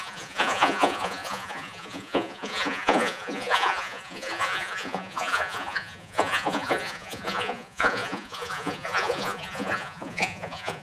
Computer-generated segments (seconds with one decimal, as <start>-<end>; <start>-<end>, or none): 0.0-10.8